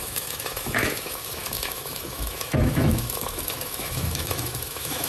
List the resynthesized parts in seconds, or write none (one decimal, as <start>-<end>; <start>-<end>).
0.0-5.1